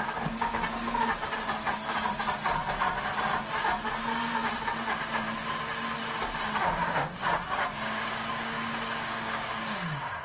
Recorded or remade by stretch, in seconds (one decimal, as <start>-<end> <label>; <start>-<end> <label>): 0.0-6.8 recorded; 6.8-10.2 remade